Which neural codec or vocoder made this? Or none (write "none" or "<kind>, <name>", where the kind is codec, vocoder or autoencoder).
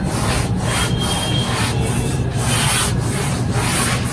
none